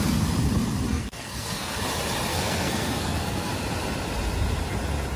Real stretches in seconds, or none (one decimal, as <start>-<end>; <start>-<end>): 0.0-0.9; 1.8-2.3; 3.5-5.2